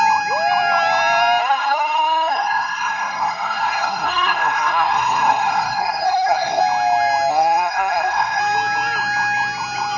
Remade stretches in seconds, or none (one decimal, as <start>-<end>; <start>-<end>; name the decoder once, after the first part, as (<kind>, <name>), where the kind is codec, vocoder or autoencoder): 1.4-6.6 (codec, SNAC); 7.3-8.4